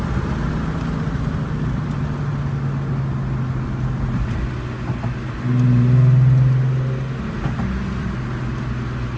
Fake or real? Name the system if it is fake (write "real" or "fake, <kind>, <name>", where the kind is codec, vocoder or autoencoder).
real